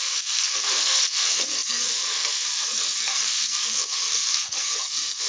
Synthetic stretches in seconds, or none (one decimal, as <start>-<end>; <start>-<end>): 0.0-5.3